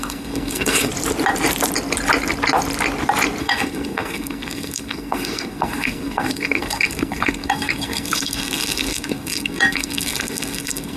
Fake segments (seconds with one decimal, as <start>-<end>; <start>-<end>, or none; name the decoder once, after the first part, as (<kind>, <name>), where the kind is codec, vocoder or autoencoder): 0.0-0.9 (codec, SNAC); 3.4-11.0